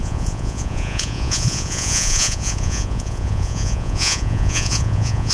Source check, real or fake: fake